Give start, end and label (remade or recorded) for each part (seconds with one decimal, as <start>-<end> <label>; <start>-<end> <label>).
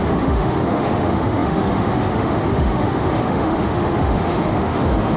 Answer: 0.0-5.2 remade